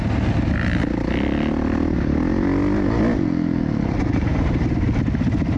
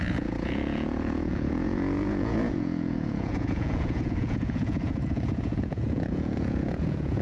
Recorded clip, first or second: first